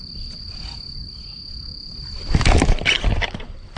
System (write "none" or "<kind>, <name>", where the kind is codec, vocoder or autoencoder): none